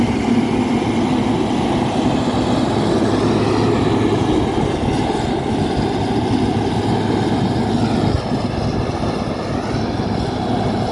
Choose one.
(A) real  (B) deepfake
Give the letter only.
A